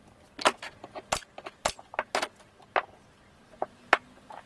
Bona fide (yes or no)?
yes